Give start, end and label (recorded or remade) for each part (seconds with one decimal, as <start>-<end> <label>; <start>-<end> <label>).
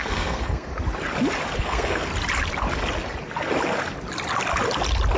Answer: 0.0-0.7 remade; 0.7-1.6 recorded; 1.6-2.1 remade; 2.1-5.2 recorded